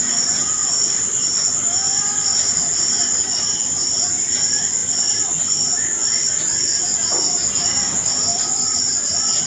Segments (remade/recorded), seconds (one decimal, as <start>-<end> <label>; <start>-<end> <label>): 0.0-9.5 recorded